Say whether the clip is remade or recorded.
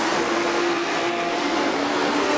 remade